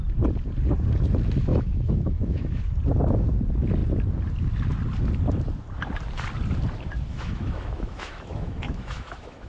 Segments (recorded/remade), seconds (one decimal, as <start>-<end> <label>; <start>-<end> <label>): 0.0-1.5 recorded; 1.5-2.6 remade; 2.6-7.1 recorded; 7.1-9.5 remade